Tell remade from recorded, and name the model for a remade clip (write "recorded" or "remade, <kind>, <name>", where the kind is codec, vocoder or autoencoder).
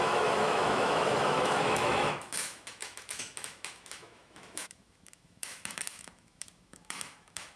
remade, autoencoder, DAC-VAE